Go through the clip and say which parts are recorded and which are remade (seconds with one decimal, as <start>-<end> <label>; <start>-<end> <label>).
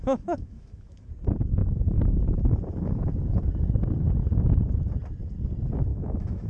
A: 0.0-1.1 remade; 1.1-5.9 recorded; 5.9-6.5 remade